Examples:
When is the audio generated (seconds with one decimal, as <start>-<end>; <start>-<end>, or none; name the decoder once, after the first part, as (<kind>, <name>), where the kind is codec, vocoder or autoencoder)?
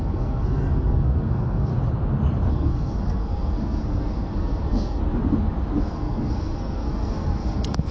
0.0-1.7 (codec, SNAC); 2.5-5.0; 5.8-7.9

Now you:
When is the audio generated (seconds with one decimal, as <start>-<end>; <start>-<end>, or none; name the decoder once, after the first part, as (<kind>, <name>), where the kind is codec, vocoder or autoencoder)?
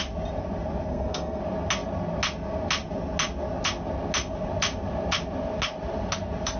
0.9-1.4 (codec, SNAC)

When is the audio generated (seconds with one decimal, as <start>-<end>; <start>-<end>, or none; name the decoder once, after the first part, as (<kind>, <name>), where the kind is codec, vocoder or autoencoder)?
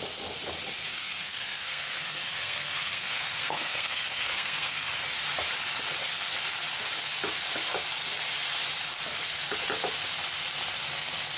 0.9-4.9 (codec, SNAC)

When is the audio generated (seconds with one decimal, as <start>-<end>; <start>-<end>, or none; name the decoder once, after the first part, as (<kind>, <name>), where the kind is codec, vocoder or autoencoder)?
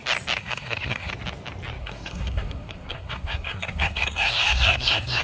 0.4-1.1 (codec, SNAC); 1.8-5.2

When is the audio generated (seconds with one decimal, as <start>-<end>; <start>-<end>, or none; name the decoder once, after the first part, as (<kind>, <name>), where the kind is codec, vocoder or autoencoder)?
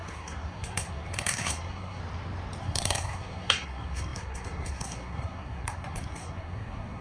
0.0-2.0 (codec, SNAC); 2.6-7.0